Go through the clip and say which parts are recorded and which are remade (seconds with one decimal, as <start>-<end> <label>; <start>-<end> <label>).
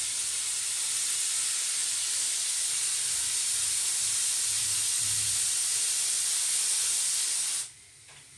0.0-8.4 recorded